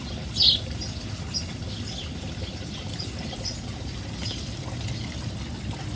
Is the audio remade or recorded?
recorded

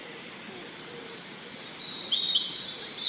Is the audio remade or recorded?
recorded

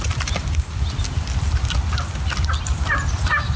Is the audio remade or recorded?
recorded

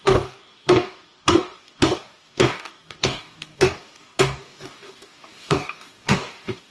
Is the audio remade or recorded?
remade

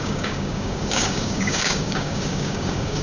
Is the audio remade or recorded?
remade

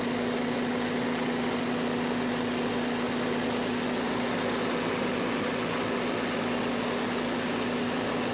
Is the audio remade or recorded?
recorded